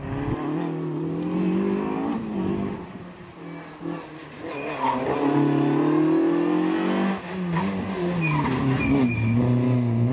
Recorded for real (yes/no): yes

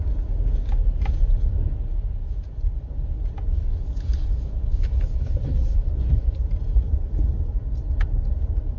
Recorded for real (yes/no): yes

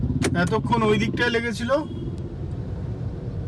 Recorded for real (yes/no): yes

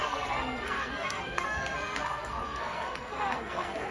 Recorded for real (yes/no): no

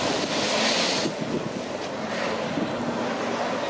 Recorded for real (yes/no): yes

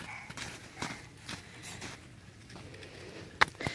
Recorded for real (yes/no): yes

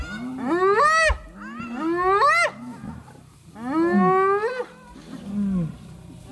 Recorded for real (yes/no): yes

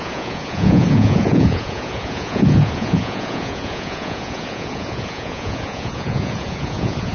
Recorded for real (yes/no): no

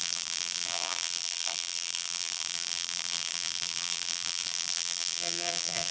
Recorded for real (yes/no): no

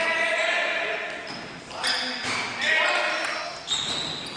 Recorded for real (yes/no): yes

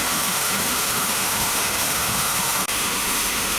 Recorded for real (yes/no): no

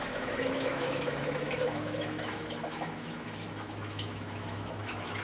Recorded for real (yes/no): no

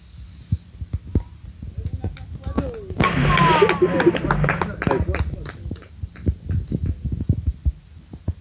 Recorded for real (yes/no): yes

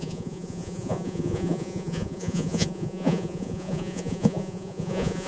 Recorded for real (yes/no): no